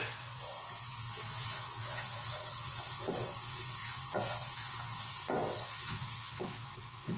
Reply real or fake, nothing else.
fake